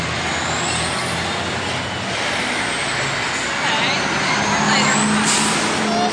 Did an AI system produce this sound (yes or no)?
no